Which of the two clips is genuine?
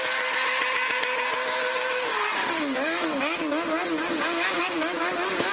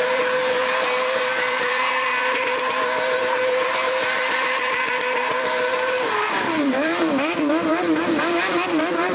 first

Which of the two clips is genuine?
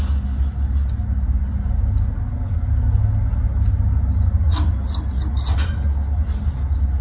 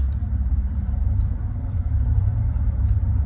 first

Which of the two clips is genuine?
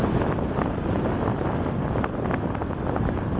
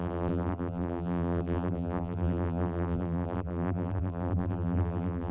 first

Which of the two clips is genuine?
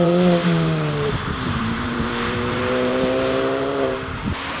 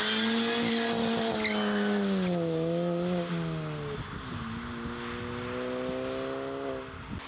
second